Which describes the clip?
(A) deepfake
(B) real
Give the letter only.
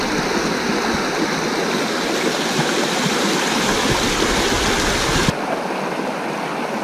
B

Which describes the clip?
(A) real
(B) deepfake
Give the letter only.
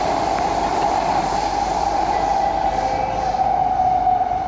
B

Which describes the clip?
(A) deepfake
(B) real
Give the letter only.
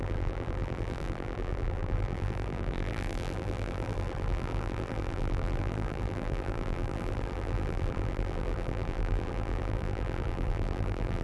A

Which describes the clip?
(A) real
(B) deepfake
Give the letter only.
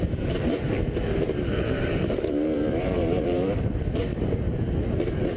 B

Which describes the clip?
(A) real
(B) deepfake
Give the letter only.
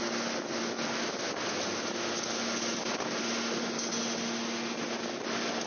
A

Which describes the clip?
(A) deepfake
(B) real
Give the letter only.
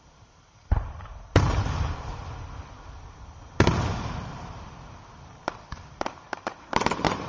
A